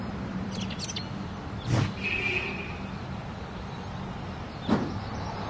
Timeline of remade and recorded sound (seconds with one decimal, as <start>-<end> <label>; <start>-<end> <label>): 0.0-5.5 recorded